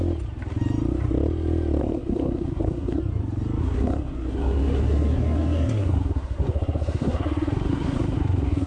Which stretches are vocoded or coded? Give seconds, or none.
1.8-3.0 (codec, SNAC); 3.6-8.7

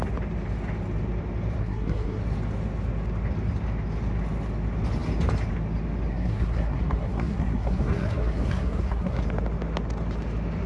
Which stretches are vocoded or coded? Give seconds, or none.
1.6-2.2 (codec, SNAC); 6.1-9.2

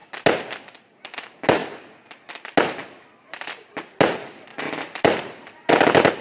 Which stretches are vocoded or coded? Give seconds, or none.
none

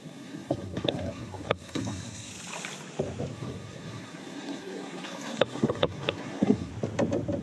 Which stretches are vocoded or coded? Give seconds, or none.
0.0-2.3 (codec, SNAC); 3.3-6.7

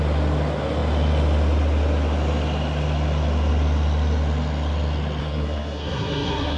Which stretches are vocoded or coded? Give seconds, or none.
5.2-6.6 (codec, SNAC)

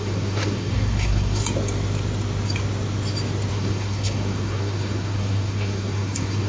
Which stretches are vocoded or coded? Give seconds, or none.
0.0-1.4 (codec, SNAC); 3.5-6.5